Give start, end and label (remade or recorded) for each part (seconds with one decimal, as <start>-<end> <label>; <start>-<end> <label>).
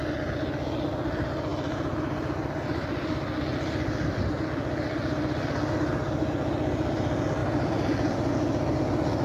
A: 0.0-1.5 recorded; 1.5-5.6 remade; 5.6-7.4 recorded; 7.4-8.3 remade; 8.3-9.2 recorded